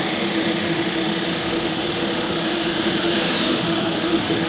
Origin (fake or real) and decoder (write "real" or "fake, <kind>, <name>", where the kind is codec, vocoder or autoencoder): fake, autoencoder, DAC-VAE